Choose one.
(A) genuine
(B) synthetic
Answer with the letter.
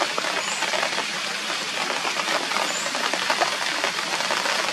A